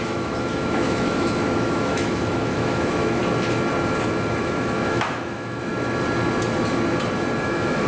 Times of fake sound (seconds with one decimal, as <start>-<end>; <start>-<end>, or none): 0.0-3.2; 4.4-5.7; 7.4-7.9